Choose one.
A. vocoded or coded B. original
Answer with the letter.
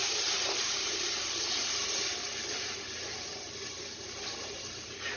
A